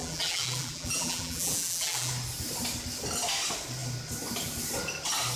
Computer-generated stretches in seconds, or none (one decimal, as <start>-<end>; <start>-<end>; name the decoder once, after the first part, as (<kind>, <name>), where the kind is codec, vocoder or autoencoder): 0.0-2.1 (vocoder, BigVGAN v2)